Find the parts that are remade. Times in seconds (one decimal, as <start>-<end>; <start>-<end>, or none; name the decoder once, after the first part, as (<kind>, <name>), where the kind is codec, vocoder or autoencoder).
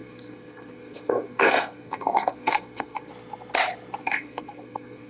0.0-3.1 (codec, SNAC); 4.0-5.1